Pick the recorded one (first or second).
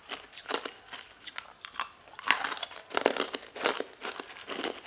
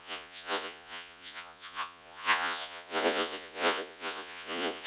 first